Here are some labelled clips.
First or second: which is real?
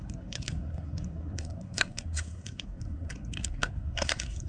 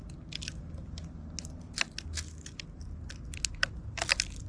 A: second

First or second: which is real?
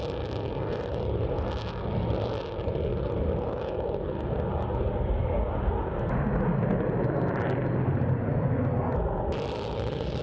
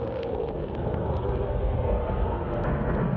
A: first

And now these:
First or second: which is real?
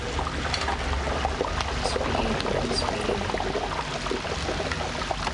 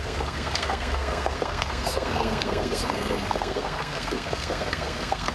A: first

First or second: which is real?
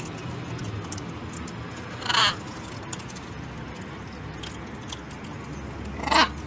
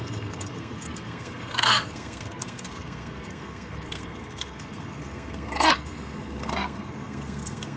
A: first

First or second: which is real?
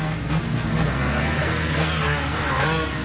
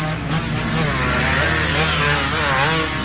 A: second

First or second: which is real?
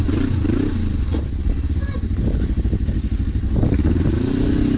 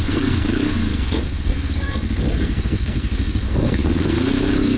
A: first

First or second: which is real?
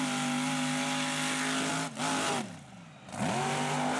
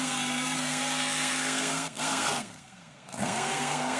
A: first